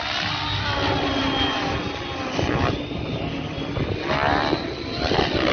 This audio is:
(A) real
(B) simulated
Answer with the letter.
A